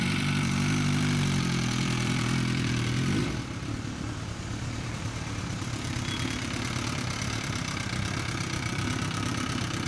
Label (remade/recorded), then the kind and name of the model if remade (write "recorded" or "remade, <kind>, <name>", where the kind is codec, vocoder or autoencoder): remade, vocoder, BigVGAN v2